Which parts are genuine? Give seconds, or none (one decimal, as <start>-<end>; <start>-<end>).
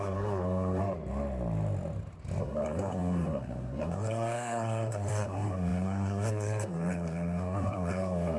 0.8-2.4